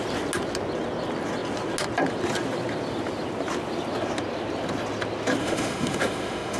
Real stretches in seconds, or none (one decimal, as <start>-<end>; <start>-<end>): 0.0-5.4